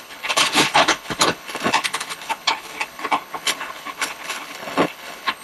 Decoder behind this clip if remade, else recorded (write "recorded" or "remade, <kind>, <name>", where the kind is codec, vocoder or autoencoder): remade, codec, HILCodec